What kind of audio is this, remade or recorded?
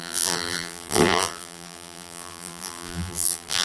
remade